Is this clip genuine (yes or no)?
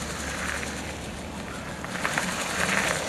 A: yes